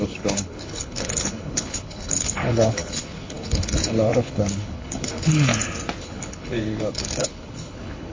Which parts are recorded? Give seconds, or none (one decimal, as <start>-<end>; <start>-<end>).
5.5-6.0